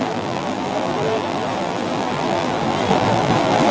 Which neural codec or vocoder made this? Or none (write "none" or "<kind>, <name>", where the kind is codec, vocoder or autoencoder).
vocoder, BigVGAN v2